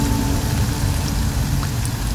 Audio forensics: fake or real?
real